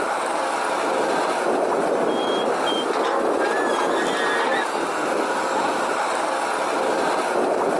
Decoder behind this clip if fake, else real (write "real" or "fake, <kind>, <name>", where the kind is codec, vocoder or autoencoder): real